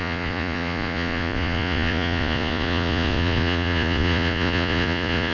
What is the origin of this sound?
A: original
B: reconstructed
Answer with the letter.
B